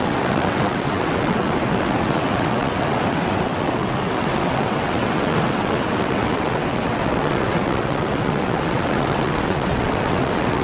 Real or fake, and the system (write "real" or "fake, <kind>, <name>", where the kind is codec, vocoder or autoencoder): fake, vocoder, WaveNeXt